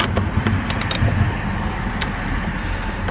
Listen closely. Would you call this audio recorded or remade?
recorded